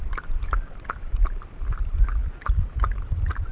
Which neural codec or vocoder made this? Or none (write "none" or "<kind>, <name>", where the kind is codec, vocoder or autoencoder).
vocoder, BigVGAN v2